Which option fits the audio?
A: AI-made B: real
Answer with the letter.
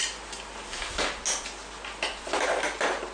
B